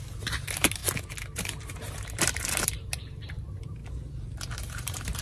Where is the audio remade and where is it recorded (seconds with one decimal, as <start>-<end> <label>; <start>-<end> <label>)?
0.0-0.8 remade; 0.8-1.6 recorded; 1.6-3.8 remade; 3.8-4.7 recorded; 4.7-5.2 remade